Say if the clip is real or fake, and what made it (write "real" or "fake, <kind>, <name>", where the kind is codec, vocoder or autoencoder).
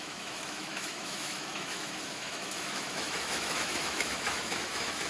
fake, autoencoder, DAC-VAE